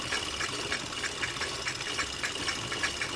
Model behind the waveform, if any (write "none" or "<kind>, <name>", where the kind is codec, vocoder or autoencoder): none